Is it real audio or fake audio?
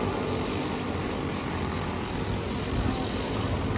real